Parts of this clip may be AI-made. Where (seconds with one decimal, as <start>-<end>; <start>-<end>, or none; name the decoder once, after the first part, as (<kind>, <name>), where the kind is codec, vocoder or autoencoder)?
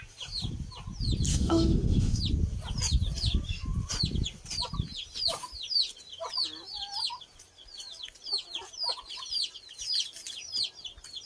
1.3-2.2 (autoencoder, DAC-VAE)